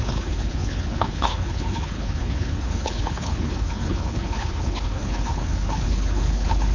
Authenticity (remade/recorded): remade